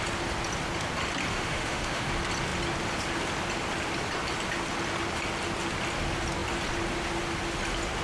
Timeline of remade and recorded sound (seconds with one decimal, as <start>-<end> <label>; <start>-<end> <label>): 0.0-1.3 recorded; 1.3-2.1 remade; 2.1-8.0 recorded

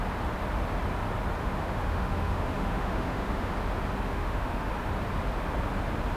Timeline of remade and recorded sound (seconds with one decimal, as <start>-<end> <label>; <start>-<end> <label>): 0.0-1.4 recorded; 1.4-3.5 remade; 3.5-4.1 recorded; 4.1-4.7 remade; 4.7-6.2 recorded

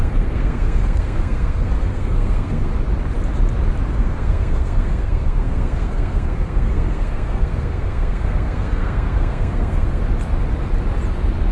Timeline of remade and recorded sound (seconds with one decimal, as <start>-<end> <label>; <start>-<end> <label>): 0.0-2.7 remade; 2.7-3.9 recorded; 3.9-10.0 remade; 10.0-11.5 recorded

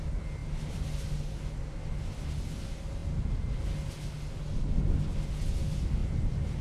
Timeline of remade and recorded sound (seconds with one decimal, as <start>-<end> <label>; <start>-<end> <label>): 0.0-6.0 recorded; 6.0-6.6 remade

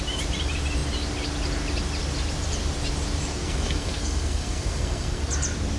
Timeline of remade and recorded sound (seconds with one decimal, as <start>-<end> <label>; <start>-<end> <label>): 0.0-3.3 recorded; 3.3-5.2 remade; 5.2-5.8 recorded